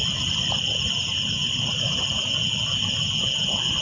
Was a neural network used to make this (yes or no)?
no